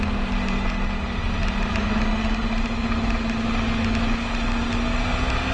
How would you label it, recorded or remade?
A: recorded